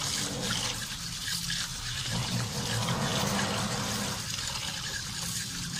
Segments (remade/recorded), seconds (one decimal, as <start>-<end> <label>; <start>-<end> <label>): 0.0-1.7 recorded; 1.7-2.6 remade; 2.6-5.8 recorded